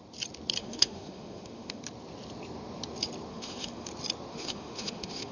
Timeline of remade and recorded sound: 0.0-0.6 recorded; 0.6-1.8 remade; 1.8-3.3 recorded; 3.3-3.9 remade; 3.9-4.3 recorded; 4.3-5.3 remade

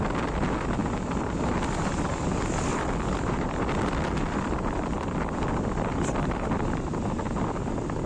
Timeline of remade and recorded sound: 0.0-2.7 recorded; 2.7-6.7 remade; 6.7-8.1 recorded

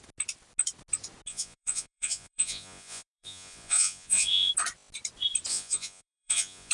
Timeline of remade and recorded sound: 0.0-1.3 recorded; 1.3-4.5 remade; 4.5-5.5 recorded; 5.5-6.7 remade